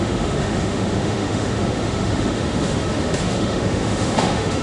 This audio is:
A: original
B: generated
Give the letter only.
B